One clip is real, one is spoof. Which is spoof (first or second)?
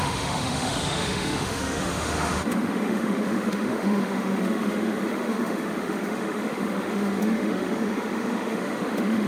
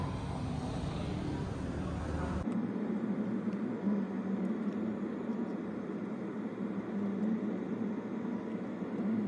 first